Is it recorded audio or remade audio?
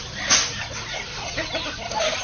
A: recorded